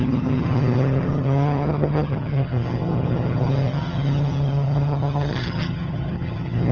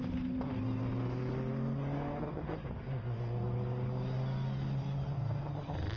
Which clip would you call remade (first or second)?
first